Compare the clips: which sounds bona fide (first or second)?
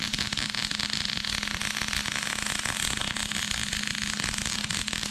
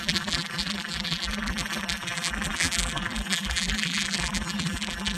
first